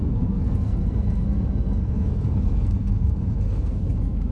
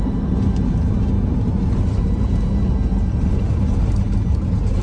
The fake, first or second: first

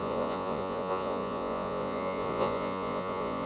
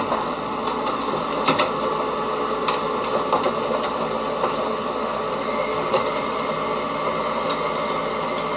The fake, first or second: first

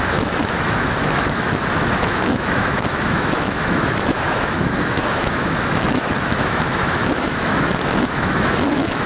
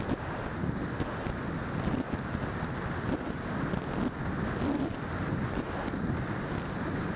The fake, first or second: first